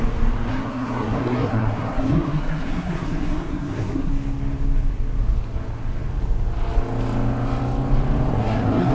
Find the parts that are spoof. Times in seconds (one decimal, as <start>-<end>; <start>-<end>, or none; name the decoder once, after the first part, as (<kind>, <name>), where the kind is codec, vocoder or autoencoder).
0.5-4.1 (codec, SNAC); 8.3-8.9